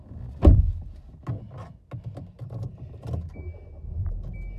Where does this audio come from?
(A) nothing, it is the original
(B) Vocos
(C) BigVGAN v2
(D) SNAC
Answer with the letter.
A